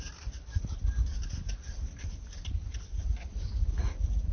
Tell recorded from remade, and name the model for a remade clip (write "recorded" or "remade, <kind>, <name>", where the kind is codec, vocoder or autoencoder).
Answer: recorded